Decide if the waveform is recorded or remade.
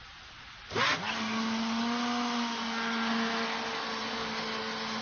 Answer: recorded